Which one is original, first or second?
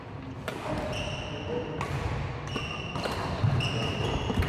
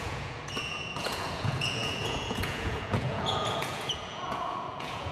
first